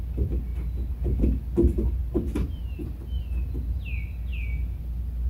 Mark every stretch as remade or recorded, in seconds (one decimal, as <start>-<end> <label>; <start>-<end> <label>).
0.0-5.3 recorded